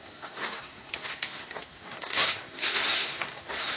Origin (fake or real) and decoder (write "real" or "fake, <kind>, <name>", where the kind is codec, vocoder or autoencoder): fake, codec, SNAC